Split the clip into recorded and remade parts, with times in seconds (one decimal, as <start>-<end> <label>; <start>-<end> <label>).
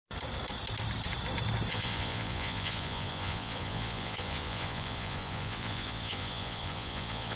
0.0-1.7 recorded; 1.7-7.4 remade